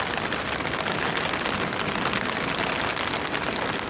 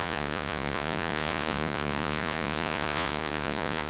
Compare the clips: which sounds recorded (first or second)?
first